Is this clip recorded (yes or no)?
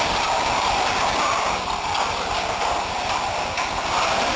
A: yes